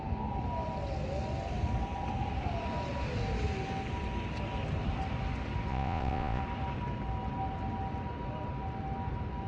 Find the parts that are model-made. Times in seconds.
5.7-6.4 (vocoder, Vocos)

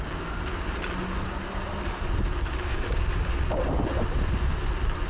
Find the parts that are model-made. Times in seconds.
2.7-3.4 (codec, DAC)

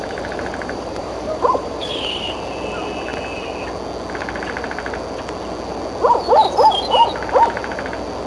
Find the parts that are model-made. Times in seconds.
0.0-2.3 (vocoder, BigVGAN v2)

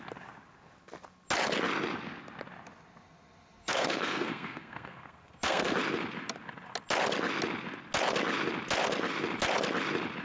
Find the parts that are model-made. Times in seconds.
3.6-5.8 (codec, SNAC)

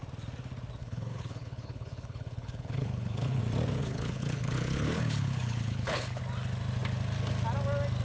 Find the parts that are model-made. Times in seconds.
0.8-3.4 (codec, HILCodec); 3.8-6.2

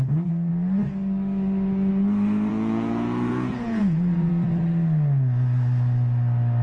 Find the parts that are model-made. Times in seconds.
2.5-4.3 (vocoder, Vocos)

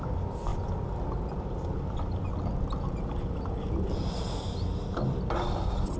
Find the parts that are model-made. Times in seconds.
none